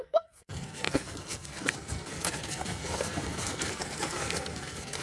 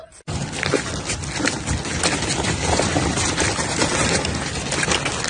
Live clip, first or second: second